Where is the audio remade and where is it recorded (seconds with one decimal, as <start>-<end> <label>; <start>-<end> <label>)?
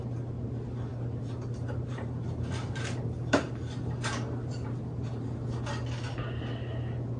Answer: 0.0-0.9 recorded; 0.9-5.2 remade; 5.2-7.2 recorded